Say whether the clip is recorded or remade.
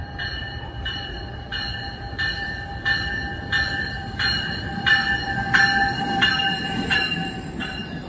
remade